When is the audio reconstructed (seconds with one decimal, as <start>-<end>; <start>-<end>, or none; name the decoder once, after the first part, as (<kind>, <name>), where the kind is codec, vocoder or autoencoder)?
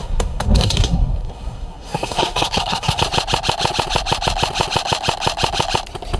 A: 0.0-3.0 (codec, SNAC)